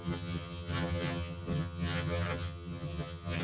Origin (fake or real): fake